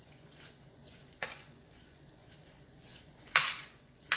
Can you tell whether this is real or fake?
fake